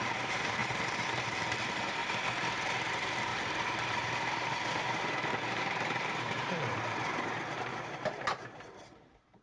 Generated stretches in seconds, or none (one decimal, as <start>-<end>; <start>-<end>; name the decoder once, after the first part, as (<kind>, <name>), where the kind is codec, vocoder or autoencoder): 0.0-2.0 (vocoder, BigVGAN v2); 2.9-9.4